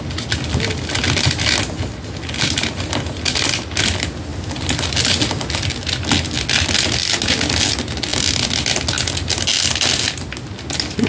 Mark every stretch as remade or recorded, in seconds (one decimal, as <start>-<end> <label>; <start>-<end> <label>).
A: 0.0-11.1 recorded